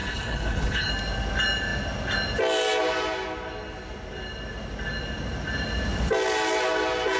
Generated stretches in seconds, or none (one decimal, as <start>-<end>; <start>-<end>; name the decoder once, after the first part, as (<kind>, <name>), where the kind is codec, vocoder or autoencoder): 0.0-0.9 (codec, HILCodec)